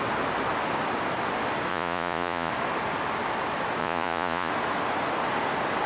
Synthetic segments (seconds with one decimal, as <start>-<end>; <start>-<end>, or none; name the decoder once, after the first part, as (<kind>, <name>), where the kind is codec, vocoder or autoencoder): 1.7-2.5 (vocoder, Vocos); 3.8-4.5

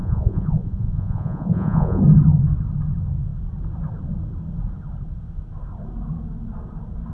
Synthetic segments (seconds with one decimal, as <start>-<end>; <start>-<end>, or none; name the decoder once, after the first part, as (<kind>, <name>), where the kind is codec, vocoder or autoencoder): 0.0-2.0 (vocoder, Vocos)

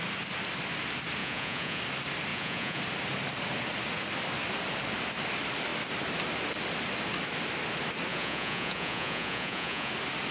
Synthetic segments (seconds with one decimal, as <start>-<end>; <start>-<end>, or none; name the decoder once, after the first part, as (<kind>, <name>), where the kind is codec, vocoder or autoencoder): 1.2-1.8 (vocoder, Vocos); 2.3-2.8; 8.1-9.9

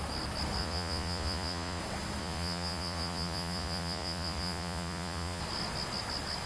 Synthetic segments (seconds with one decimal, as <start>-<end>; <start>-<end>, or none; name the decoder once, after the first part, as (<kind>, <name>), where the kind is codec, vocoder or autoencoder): 0.6-1.8 (vocoder, Vocos); 2.2-5.4

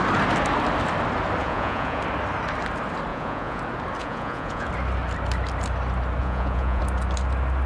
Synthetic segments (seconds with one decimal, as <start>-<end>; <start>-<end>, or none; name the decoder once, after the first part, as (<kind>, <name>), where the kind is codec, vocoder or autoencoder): 1.4-2.0 (vocoder, Vocos); 3.1-3.6; 4.0-4.7; 6.2-6.8

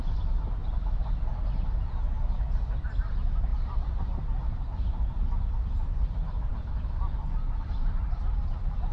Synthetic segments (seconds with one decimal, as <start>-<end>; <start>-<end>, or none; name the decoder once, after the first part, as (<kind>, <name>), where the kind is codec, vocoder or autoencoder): none

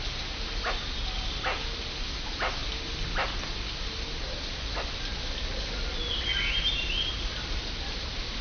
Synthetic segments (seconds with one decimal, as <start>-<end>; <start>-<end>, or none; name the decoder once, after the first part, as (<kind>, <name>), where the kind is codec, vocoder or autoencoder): none